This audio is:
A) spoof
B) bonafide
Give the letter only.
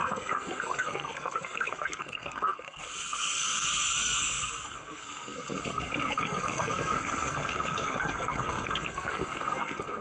A